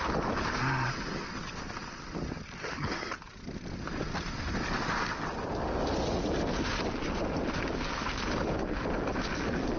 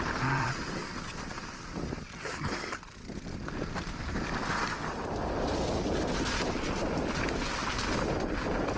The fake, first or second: second